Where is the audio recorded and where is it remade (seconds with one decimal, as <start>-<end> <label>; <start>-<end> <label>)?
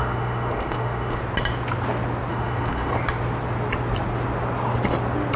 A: 0.0-1.2 remade; 1.2-2.3 recorded; 2.3-2.9 remade; 2.9-5.4 recorded